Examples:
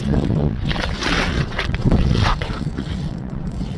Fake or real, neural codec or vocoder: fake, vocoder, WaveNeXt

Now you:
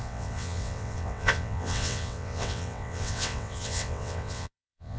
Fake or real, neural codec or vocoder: fake, vocoder, WaveNeXt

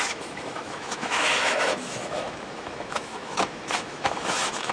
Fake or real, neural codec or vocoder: fake, autoencoder, DAC-VAE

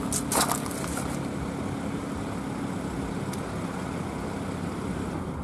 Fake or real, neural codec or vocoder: real